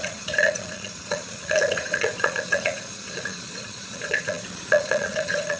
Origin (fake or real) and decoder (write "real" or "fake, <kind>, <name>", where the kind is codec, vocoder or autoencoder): fake, vocoder, Vocos